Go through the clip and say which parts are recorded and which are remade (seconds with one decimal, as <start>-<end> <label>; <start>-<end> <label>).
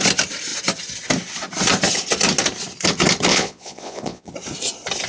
0.0-3.3 recorded; 3.3-4.3 remade; 4.3-5.1 recorded